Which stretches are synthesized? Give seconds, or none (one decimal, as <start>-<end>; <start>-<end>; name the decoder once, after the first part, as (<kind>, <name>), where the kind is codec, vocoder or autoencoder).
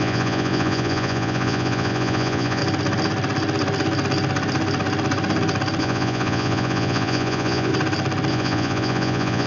0.0-2.6 (vocoder, Vocos); 5.8-7.7; 8.3-9.5